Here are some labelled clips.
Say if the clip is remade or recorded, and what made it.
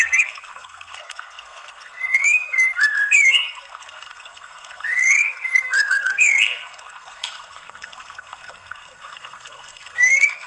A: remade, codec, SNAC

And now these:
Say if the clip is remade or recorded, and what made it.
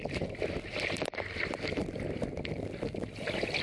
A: recorded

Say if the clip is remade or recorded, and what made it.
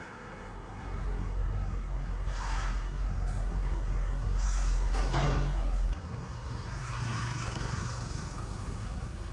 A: remade, codec, SNAC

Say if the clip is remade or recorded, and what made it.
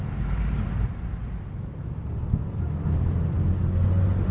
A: recorded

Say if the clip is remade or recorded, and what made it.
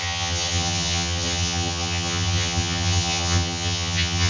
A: remade, vocoder, HiFi-GAN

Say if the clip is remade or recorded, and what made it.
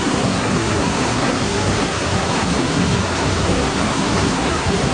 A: remade, codec, SNAC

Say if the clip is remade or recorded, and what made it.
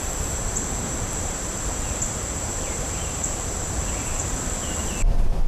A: remade, vocoder, BigVGAN v2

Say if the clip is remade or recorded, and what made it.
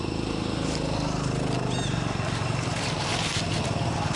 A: recorded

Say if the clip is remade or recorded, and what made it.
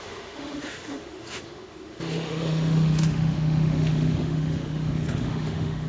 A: remade, autoencoder, DAC-VAE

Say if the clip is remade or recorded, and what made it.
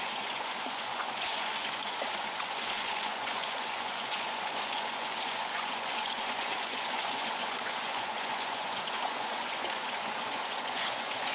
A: remade, vocoder, Vocos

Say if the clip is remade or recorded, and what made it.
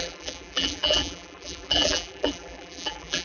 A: remade, vocoder, BigVGAN v2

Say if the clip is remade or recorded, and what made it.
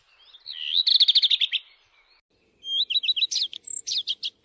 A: recorded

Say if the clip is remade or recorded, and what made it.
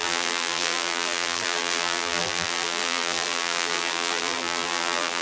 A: remade, vocoder, BigVGAN v2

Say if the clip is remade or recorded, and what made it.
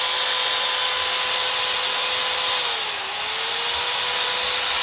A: recorded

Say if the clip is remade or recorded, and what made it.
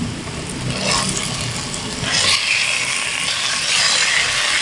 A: recorded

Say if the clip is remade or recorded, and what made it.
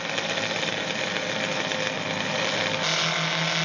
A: recorded